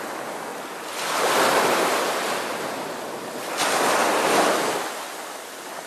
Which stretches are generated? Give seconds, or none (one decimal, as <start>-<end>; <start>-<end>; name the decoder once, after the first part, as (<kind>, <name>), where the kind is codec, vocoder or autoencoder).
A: none